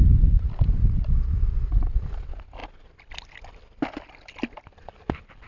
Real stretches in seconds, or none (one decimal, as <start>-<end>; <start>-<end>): 0.0-5.5

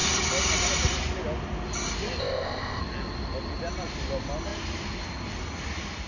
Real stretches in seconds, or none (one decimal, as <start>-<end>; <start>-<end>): 0.0-2.2; 2.8-6.1

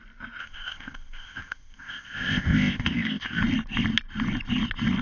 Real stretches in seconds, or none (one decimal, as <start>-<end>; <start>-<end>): 0.0-0.4; 3.4-5.0

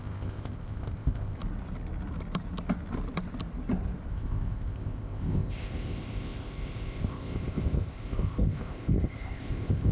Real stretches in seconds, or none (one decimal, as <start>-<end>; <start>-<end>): 1.4-4.1

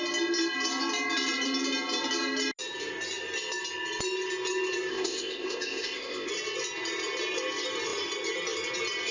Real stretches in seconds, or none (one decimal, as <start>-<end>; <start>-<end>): 0.0-4.9; 6.3-9.1